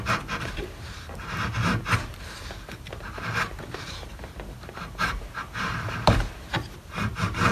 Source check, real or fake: fake